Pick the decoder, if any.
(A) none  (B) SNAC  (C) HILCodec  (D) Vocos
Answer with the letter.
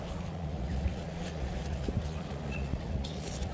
D